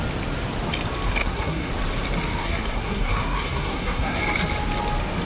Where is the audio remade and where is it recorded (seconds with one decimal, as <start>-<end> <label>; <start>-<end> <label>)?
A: 0.0-1.2 recorded; 1.2-1.7 remade; 1.7-2.4 recorded; 2.4-4.2 remade; 4.2-5.2 recorded